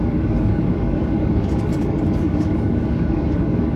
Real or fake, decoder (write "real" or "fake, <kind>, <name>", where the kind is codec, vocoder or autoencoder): fake, codec, DAC